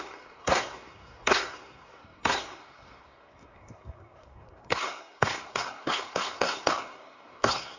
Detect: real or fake fake